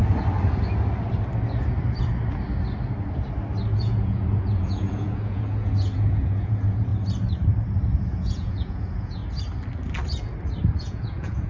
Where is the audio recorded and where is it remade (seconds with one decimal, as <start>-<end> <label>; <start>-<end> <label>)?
0.0-3.8 recorded; 3.8-6.9 remade; 6.9-8.0 recorded; 8.0-9.2 remade; 9.2-10.8 recorded; 10.8-11.5 remade